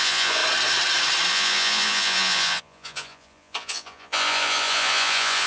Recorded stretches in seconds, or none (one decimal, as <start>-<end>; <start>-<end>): 0.4-1.3